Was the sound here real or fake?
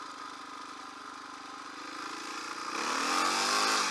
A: real